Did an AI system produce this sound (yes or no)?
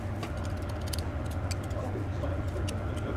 no